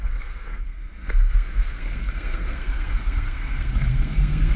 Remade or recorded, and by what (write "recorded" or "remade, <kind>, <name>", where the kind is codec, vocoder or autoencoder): remade, codec, SNAC